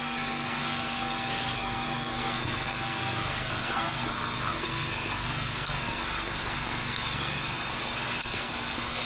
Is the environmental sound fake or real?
fake